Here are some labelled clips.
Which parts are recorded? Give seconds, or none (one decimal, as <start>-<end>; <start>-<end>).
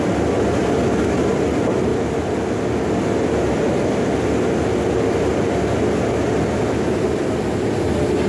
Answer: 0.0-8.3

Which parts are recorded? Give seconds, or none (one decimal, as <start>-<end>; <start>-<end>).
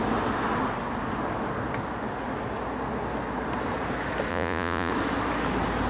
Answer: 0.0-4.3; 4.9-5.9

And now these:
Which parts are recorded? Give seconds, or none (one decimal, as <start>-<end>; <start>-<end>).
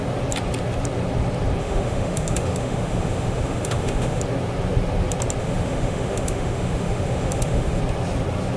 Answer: 0.0-1.6; 4.2-5.4; 7.8-8.6